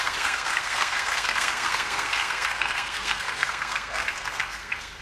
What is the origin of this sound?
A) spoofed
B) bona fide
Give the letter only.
A